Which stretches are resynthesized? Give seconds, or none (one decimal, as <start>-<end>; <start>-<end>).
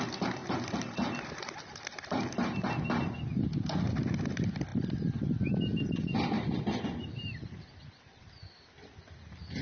none